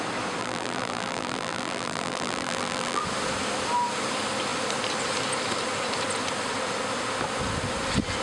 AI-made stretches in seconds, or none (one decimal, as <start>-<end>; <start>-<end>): 0.4-3.0